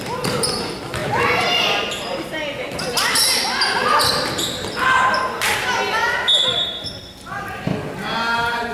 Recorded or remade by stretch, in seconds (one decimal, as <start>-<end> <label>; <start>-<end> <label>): 0.0-8.7 recorded